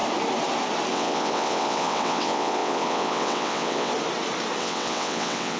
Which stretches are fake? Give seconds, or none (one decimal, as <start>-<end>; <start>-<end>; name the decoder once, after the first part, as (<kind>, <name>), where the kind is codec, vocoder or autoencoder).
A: 0.9-3.9 (vocoder, WaveNeXt); 4.6-5.6